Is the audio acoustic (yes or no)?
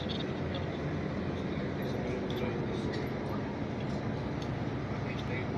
yes